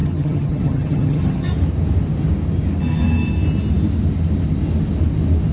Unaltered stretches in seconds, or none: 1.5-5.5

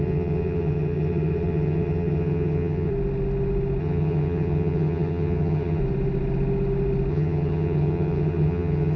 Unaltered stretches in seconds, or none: 2.9-3.8; 5.8-7.1

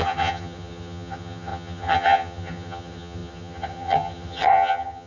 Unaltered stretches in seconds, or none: none

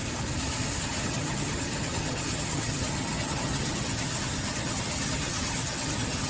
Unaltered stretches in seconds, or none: 0.0-0.8

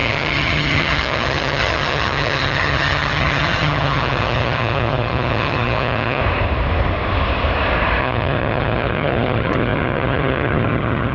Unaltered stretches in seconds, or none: 6.2-8.0

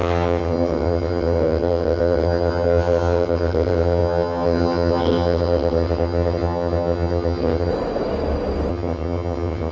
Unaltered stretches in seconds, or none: 7.7-8.7

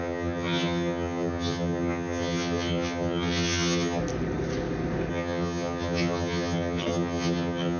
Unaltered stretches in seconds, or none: 4.0-5.1

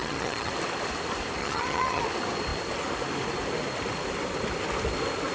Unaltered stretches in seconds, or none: 0.5-1.4; 2.0-5.3